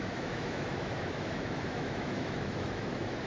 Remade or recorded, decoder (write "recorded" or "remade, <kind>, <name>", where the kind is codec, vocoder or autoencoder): remade, autoencoder, DAC-VAE